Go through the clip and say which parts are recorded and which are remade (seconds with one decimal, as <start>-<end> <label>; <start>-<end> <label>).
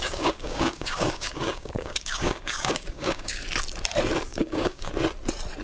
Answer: 0.0-3.4 remade; 3.4-4.3 recorded; 4.3-4.9 remade; 4.9-5.6 recorded